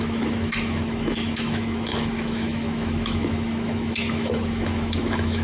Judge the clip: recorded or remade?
remade